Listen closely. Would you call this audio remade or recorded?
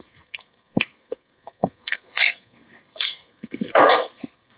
remade